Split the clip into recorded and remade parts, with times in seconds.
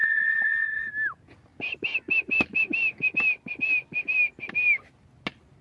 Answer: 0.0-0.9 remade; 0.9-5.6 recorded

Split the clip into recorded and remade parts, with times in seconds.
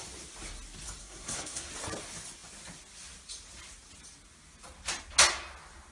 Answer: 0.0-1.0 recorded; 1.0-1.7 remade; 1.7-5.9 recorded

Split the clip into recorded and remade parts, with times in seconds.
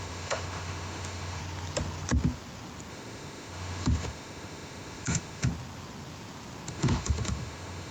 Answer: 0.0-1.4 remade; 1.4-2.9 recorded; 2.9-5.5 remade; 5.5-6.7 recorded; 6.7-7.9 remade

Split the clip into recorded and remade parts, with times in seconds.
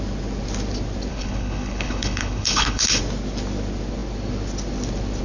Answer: 0.0-1.1 recorded; 1.1-3.0 remade; 3.0-5.2 recorded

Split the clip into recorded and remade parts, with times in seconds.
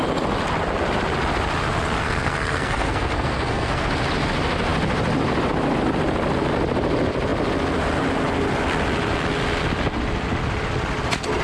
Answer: 0.0-2.0 recorded; 2.0-3.9 remade; 3.9-11.4 recorded